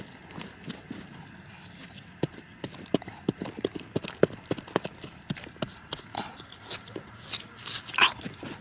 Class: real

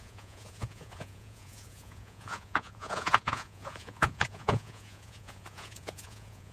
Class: fake